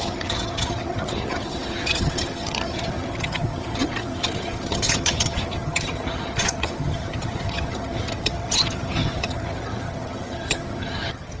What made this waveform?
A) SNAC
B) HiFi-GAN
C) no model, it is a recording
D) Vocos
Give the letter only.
B